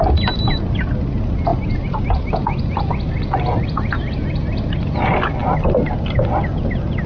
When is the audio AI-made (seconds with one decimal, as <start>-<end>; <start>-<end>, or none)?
none